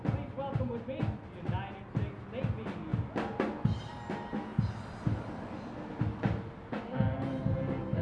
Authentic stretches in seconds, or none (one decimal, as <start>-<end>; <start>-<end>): 0.0-8.0